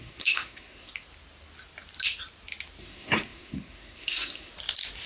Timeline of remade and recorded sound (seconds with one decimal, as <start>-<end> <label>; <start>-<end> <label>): 0.0-0.9 remade; 0.9-2.8 recorded; 2.8-4.5 remade; 4.5-5.1 recorded